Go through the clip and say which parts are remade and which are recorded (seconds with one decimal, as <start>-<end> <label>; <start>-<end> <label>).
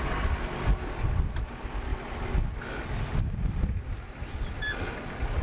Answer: 0.0-5.4 recorded